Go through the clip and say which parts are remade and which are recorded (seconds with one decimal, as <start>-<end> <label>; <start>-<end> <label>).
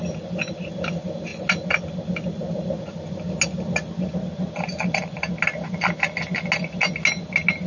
0.0-7.7 recorded